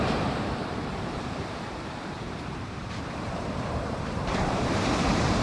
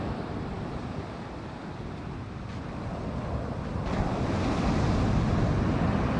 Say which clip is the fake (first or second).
first